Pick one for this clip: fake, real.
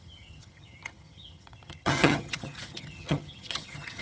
fake